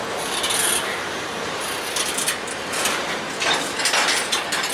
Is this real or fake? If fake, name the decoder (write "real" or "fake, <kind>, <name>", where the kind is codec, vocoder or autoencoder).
real